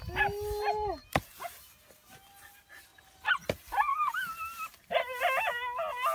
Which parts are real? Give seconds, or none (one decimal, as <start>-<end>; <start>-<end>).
0.0-3.9; 5.2-6.1

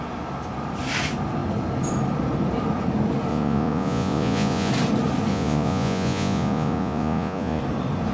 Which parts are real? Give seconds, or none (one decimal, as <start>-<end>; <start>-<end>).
0.0-3.3; 4.7-5.3; 7.6-8.1

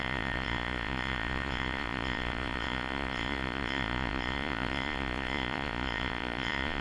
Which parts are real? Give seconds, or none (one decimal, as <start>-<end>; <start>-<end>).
none

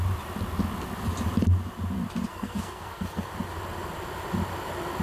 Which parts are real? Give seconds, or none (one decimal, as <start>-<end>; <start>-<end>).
0.0-2.3; 3.3-5.0

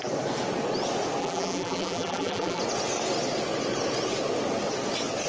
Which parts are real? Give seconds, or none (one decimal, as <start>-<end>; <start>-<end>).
0.0-1.2; 2.6-5.3

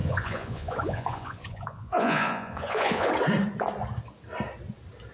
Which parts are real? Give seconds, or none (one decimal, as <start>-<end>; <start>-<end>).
3.1-5.1

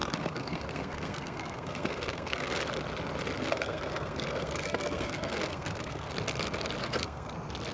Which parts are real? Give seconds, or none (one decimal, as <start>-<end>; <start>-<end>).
2.6-3.4; 6.1-6.8; 7.3-7.7

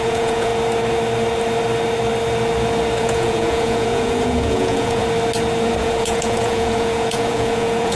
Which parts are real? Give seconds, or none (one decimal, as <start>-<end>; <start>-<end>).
0.5-3.0; 5.0-5.8